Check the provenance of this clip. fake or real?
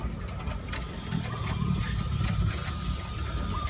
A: real